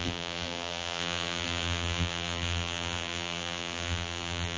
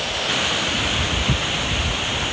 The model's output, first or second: first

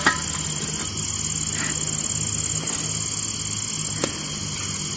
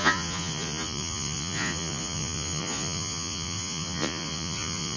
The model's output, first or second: second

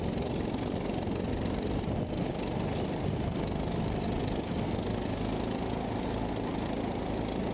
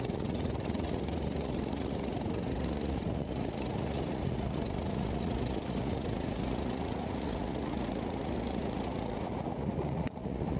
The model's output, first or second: second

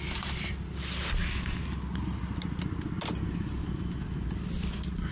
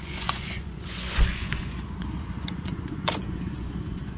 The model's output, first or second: second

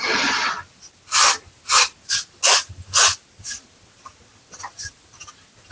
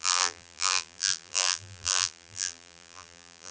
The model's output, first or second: second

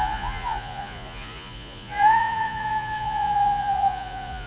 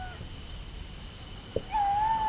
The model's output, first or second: first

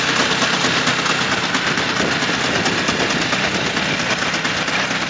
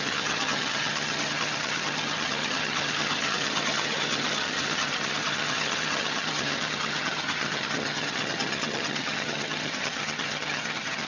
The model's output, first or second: second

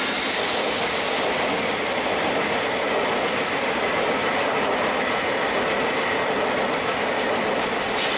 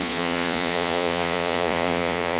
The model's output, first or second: second